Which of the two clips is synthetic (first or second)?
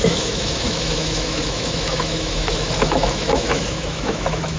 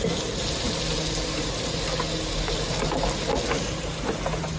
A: first